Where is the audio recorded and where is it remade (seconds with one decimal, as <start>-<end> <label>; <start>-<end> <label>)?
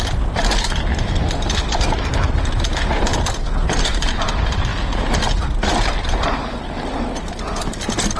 0.0-8.2 recorded